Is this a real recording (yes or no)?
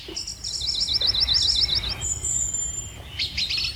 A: yes